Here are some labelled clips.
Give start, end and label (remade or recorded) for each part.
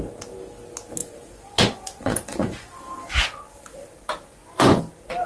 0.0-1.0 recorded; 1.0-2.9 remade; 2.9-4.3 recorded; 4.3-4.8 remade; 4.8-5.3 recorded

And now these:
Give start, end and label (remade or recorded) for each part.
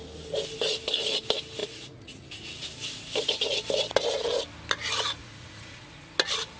0.0-1.6 recorded; 1.6-2.2 remade; 2.2-5.2 recorded; 5.2-5.9 remade; 5.9-6.6 recorded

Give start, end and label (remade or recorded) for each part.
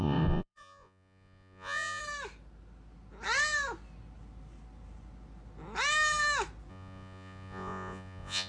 0.0-2.0 remade; 2.0-6.7 recorded; 6.7-8.5 remade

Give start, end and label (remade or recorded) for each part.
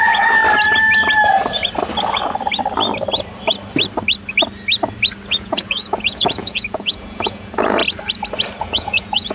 0.0-0.4 remade; 0.4-5.3 recorded; 5.3-7.8 remade; 7.8-8.6 recorded; 8.6-9.3 remade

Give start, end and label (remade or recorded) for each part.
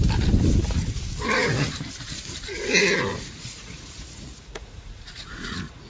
0.0-3.1 recorded; 3.1-5.9 remade